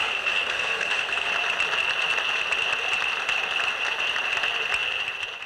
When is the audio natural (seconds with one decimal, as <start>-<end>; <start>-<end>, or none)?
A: 1.3-5.5